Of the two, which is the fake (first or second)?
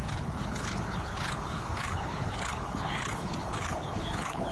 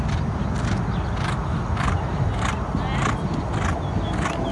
first